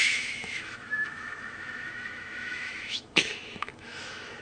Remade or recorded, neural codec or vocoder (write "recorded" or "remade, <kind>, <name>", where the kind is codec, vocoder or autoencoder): remade, autoencoder, DAC-VAE